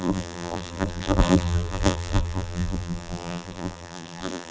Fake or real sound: fake